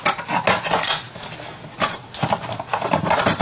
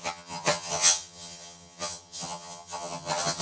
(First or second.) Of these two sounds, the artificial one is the second